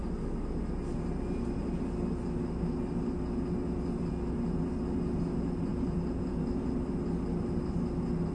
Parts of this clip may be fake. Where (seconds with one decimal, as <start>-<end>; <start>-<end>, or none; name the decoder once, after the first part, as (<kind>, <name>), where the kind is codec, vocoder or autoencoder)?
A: none